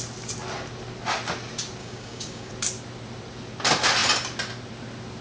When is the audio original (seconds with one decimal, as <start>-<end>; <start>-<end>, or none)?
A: 0.0-1.8; 2.5-5.2